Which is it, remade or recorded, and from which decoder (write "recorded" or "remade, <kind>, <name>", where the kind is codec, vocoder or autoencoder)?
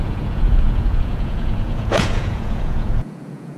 remade, vocoder, Vocos